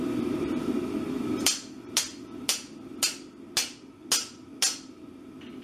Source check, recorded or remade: recorded